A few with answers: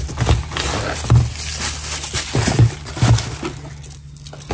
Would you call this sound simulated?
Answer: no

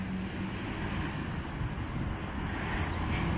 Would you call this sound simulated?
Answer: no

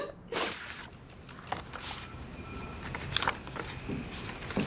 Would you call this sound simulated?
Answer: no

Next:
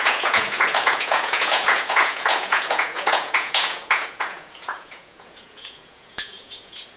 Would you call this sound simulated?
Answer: yes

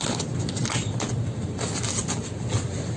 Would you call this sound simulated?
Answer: no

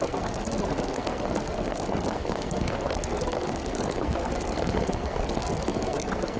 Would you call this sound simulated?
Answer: yes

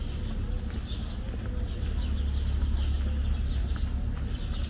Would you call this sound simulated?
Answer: no